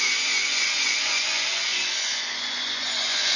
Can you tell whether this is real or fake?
fake